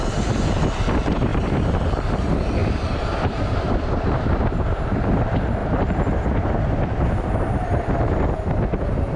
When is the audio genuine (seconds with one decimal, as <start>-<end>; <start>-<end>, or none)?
0.0-2.6; 3.9-5.6; 7.7-9.2